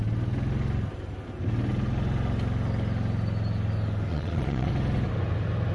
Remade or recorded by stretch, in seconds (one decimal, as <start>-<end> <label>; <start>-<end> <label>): 0.0-4.1 recorded; 4.1-4.7 remade; 4.7-5.7 recorded